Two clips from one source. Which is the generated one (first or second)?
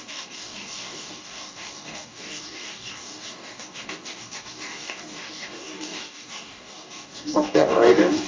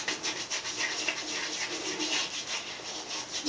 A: first